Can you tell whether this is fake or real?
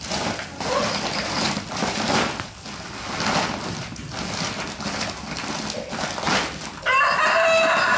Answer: real